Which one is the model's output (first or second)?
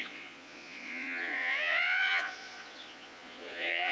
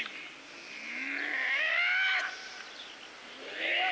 first